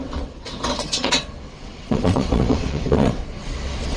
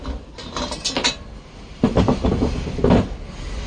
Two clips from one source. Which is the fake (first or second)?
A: first